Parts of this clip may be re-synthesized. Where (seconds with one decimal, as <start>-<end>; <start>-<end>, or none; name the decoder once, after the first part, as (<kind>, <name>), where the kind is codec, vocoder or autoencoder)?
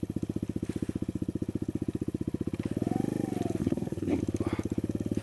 3.6-4.2 (codec, SNAC)